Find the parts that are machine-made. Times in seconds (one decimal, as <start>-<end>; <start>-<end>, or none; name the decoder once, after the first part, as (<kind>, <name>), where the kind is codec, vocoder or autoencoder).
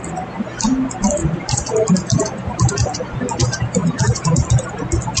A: 1.2-3.3 (vocoder, BigVGAN v2); 3.8-4.5